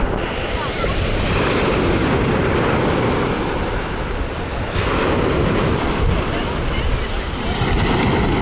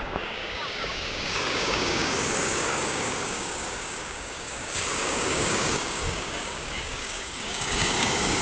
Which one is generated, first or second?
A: second